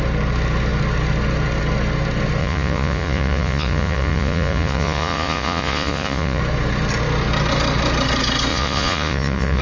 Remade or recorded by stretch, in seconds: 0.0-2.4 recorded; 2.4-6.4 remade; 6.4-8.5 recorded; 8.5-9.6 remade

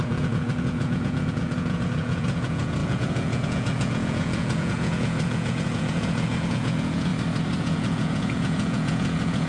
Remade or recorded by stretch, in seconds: 0.0-7.1 remade; 7.1-7.6 recorded; 7.6-9.5 remade

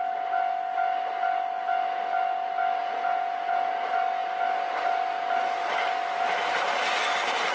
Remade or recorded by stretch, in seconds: 0.0-2.8 recorded; 2.8-3.7 remade; 3.7-7.5 recorded

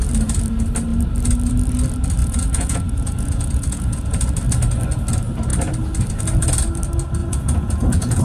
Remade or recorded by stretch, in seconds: 0.0-2.2 recorded; 2.2-4.2 remade; 4.2-7.2 recorded; 7.2-8.2 remade

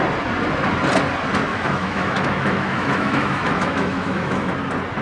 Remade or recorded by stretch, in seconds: 0.0-1.5 recorded; 1.5-4.5 remade; 4.5-5.0 recorded

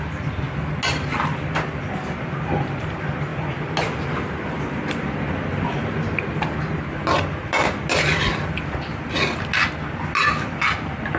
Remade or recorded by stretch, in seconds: 0.0-11.2 recorded

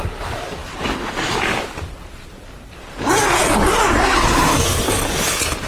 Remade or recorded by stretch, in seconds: 0.0-5.7 recorded